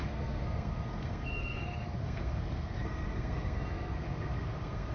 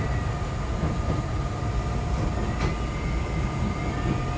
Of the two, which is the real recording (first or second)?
second